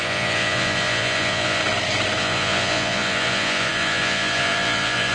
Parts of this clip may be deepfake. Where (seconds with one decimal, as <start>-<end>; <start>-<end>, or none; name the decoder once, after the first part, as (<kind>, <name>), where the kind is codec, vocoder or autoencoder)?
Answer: 0.0-1.6 (vocoder, Vocos); 2.2-5.1

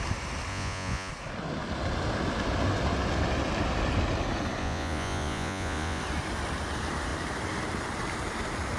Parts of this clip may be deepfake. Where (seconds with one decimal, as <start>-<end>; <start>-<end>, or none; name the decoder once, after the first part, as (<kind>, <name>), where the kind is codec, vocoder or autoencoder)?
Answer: 0.5-1.1 (vocoder, Vocos); 4.6-6.0

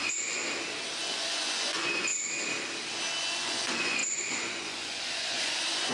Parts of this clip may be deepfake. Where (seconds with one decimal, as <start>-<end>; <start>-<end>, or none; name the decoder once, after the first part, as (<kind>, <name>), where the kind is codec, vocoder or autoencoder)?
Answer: 0.0-0.4 (vocoder, Vocos); 1.0-2.1; 3.2-5.9

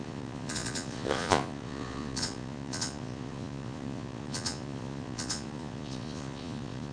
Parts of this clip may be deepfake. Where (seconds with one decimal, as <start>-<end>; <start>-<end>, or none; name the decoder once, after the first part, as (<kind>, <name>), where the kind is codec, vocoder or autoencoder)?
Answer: 0.0-6.9 (vocoder, Vocos)

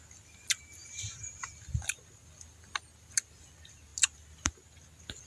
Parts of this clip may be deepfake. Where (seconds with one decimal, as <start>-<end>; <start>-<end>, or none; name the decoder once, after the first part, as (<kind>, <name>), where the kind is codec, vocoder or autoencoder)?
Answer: none